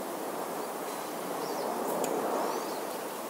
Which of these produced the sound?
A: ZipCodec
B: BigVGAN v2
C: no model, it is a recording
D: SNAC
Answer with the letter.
B